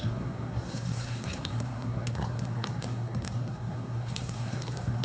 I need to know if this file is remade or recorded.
remade